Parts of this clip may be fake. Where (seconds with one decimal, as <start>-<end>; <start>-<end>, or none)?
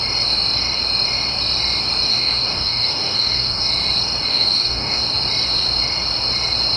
2.1-3.7; 4.3-5.0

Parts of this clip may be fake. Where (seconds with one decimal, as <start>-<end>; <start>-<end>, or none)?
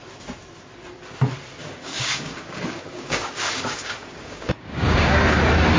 1.6-5.1